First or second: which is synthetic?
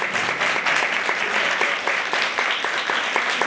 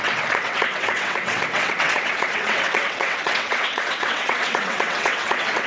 second